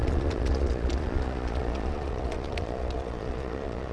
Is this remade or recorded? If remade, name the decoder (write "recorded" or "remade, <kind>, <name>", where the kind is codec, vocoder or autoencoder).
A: remade, vocoder, Vocos